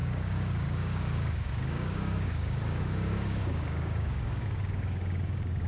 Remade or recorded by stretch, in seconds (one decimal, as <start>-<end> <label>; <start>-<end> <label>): 0.0-5.7 remade